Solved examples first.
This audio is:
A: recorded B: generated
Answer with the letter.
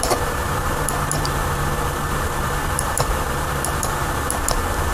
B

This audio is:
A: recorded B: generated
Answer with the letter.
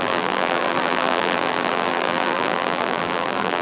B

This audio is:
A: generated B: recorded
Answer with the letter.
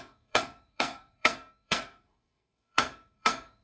A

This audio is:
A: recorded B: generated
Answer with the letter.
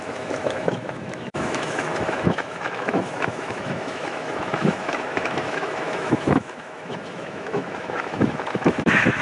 B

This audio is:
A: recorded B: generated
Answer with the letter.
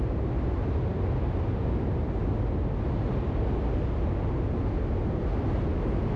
A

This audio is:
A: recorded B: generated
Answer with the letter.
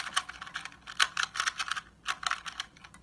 A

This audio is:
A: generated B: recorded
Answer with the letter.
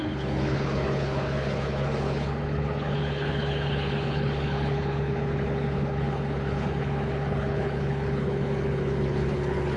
A